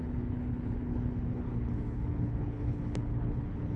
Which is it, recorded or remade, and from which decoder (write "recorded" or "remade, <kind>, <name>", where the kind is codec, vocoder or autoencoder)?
remade, codec, HILCodec